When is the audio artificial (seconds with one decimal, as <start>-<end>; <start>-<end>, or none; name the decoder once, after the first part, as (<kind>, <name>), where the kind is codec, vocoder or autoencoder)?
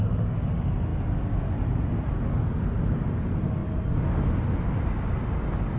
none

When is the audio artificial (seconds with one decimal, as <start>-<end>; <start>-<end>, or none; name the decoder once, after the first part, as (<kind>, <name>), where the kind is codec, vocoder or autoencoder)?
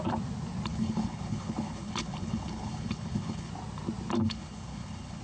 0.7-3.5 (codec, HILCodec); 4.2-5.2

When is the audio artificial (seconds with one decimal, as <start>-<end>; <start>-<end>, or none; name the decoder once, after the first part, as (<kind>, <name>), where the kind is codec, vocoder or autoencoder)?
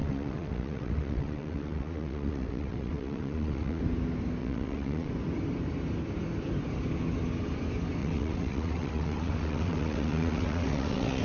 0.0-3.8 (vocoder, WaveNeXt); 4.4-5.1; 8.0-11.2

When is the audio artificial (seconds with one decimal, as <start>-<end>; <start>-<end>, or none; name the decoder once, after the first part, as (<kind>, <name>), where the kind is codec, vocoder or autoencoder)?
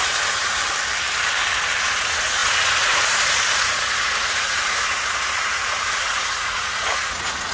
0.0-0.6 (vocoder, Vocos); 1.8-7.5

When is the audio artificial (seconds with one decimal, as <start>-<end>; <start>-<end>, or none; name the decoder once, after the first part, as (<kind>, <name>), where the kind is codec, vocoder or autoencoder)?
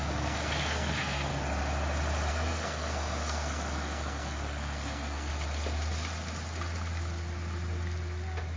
0.0-1.3 (codec, SNAC); 2.3-5.3